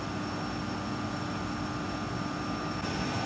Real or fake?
real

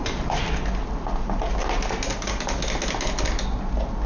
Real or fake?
real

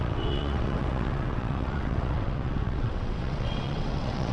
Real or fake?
fake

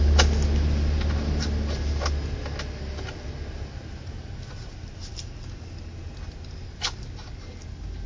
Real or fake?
real